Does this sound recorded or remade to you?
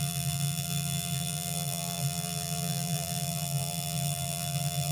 remade